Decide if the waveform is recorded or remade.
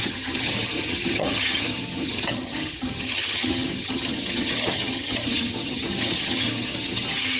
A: remade